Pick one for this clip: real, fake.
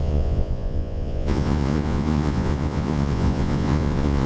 fake